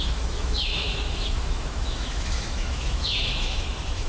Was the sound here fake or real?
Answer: fake